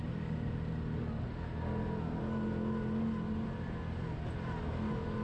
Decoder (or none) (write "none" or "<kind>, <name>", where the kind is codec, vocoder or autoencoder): none